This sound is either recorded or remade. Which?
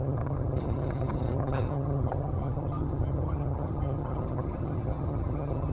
remade